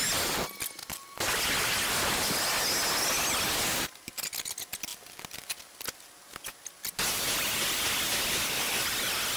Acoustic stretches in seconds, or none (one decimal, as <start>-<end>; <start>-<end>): 0.0-9.4